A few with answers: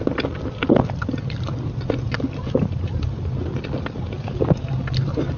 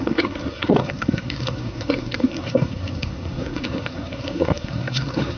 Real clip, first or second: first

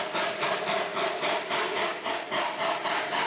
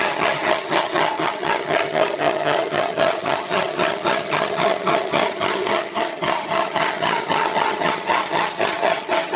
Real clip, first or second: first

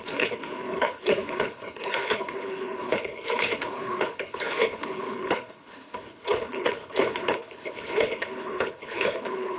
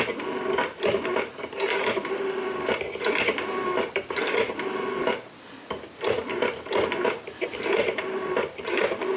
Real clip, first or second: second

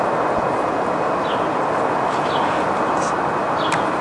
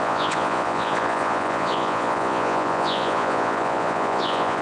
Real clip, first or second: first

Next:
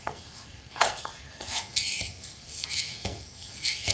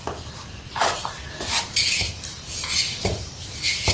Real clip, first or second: second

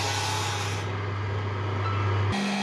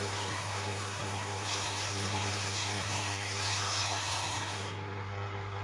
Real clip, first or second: first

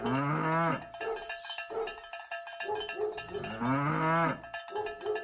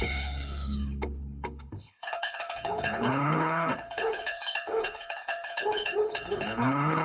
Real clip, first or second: first